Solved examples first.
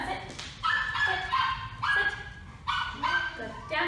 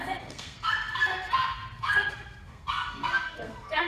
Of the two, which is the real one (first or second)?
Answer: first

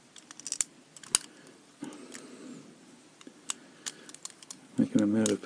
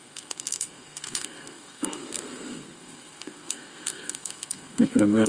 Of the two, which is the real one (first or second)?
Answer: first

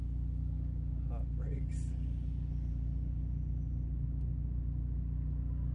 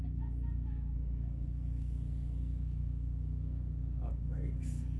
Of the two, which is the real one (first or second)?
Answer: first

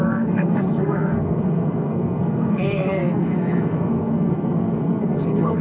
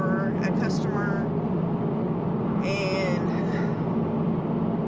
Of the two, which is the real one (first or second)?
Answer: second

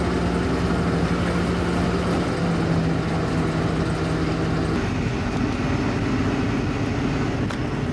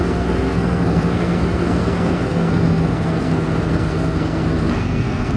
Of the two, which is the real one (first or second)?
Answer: first